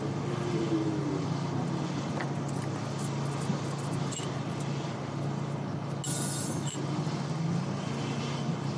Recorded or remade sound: recorded